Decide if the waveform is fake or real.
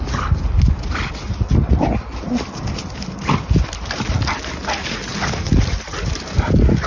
real